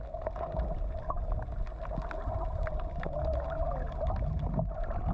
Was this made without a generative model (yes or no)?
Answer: yes